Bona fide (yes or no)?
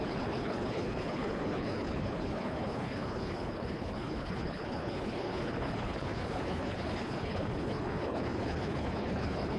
no